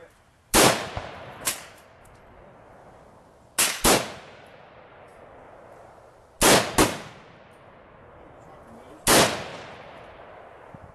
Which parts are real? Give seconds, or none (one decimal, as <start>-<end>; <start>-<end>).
1.9-9.5